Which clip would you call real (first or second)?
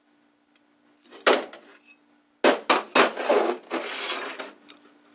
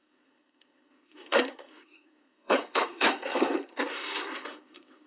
first